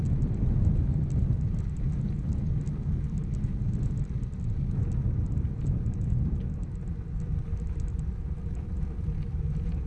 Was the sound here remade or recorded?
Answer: recorded